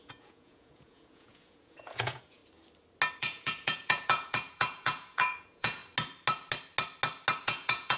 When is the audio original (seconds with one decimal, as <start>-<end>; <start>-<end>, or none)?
2.4-3.2; 5.8-7.4